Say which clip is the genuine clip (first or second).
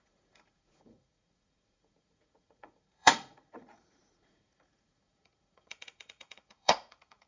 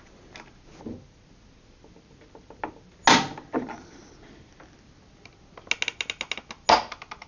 second